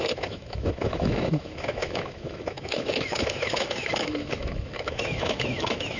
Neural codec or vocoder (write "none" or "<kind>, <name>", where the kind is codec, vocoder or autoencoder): autoencoder, DAC-VAE